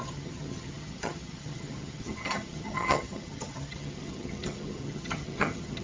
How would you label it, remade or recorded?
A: remade